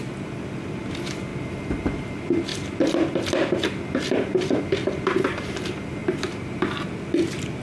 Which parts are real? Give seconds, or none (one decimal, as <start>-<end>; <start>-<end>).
0.0-1.3; 2.0-6.0; 6.6-7.6